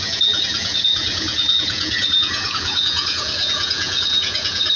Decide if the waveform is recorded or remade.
remade